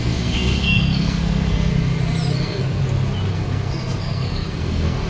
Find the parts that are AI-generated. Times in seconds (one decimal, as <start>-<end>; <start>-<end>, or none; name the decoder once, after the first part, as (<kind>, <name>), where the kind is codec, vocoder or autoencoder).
0.0-1.7 (codec, SNAC); 2.3-2.8; 3.3-5.1